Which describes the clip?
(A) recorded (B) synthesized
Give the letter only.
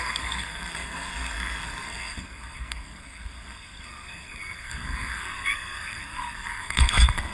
B